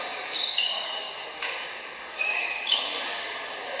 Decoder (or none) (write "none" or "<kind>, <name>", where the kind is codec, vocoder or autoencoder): codec, DAC